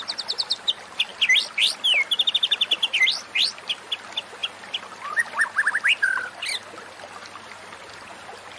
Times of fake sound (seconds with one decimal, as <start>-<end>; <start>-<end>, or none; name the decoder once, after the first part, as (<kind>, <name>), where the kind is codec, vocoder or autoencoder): none